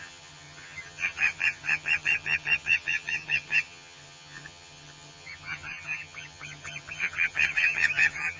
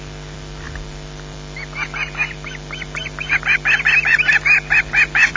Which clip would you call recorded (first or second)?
second